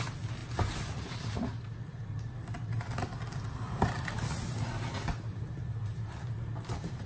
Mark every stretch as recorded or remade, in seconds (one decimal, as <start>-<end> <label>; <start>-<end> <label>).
0.0-7.1 recorded